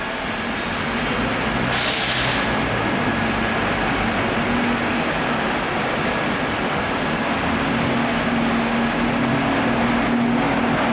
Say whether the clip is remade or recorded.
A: recorded